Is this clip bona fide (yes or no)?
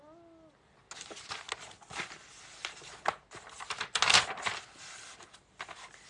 yes